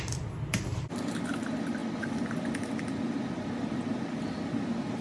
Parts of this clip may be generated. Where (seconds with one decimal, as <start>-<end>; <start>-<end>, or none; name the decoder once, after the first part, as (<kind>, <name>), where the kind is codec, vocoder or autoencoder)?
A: none